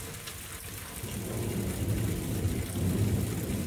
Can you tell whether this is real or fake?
real